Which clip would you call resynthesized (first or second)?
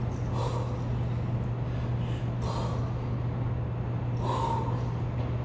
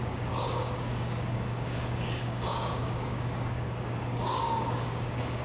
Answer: second